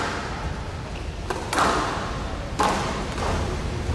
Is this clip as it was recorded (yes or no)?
yes